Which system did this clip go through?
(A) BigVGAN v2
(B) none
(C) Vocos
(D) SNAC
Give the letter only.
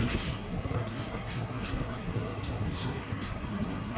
D